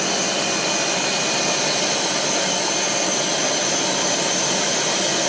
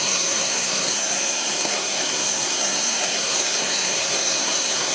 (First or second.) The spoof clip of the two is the second